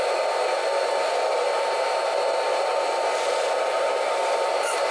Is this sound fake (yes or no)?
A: no